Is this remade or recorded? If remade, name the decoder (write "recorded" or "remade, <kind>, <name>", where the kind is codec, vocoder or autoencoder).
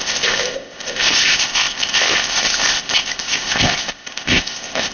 remade, codec, ZipCodec